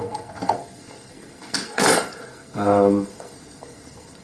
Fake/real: fake